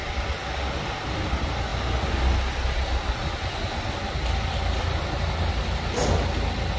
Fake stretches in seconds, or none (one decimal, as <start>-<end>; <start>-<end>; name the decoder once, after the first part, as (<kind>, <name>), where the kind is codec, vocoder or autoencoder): none

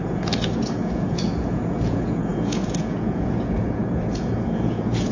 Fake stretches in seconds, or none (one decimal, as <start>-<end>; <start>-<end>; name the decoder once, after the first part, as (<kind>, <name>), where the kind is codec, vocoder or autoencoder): 0.0-5.1 (vocoder, Vocos)